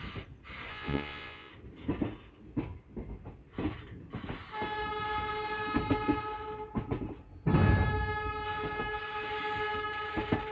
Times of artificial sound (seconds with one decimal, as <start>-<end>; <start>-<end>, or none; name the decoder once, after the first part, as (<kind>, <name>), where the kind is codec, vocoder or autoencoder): 0.7-1.5 (vocoder, Vocos)